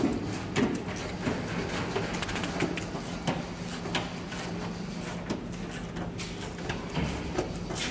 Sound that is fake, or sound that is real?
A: real